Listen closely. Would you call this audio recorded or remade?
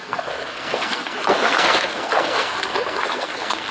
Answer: remade